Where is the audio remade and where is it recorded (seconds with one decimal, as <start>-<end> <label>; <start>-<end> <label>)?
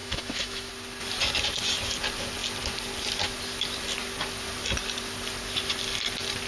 0.0-0.7 remade; 0.7-6.5 recorded